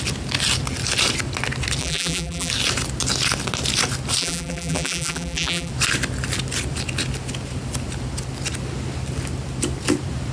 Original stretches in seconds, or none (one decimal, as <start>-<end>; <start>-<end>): 0.0-1.8; 2.5-4.2; 5.7-10.3